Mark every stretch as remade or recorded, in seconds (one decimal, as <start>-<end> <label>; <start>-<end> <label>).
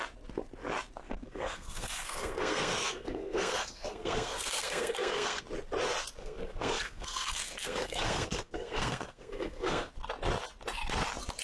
0.0-1.0 recorded; 1.0-5.4 remade; 5.4-6.2 recorded; 6.2-9.9 remade; 9.9-11.4 recorded